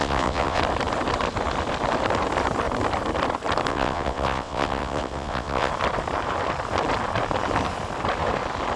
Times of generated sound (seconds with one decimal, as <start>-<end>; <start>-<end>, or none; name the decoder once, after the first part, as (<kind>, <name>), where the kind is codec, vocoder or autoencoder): 0.0-0.6 (vocoder, WaveNeXt); 3.7-5.7